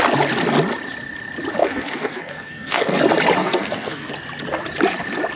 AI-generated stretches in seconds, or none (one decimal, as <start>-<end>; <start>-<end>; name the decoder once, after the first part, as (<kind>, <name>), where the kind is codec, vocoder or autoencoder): 1.6-3.0 (codec, SNAC); 3.4-4.1